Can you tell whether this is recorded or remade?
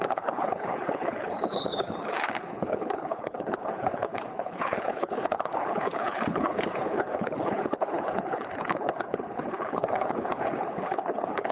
remade